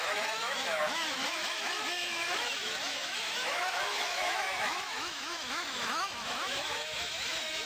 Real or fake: fake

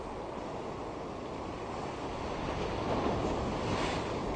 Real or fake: real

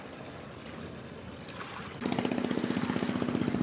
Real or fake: real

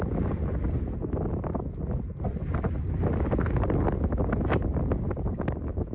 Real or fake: real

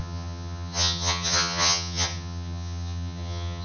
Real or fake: fake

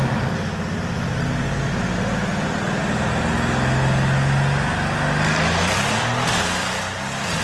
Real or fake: real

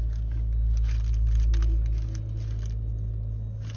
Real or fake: real